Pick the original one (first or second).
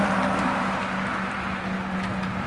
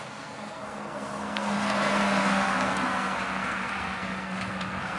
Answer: first